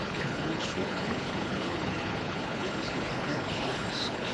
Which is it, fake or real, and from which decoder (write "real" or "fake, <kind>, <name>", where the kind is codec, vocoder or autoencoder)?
fake, codec, HILCodec